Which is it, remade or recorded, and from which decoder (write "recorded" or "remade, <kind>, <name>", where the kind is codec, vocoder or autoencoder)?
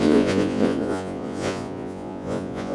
remade, vocoder, Vocos